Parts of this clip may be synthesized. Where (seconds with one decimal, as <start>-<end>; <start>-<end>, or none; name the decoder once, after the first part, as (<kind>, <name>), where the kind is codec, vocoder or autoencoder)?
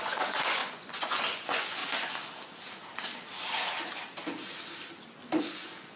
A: 0.0-1.8 (vocoder, Vocos); 5.4-6.0